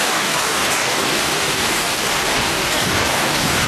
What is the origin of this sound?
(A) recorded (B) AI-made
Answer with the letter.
B